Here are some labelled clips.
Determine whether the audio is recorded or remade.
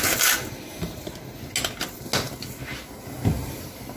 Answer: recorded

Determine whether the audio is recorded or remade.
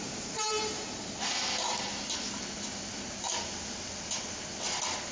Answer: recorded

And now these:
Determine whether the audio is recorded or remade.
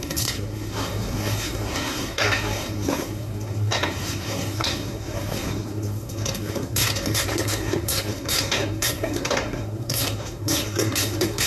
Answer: remade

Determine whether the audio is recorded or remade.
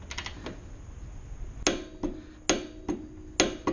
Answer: recorded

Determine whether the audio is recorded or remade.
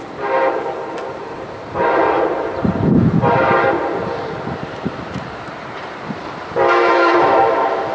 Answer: remade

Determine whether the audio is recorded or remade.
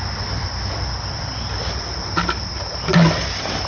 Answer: recorded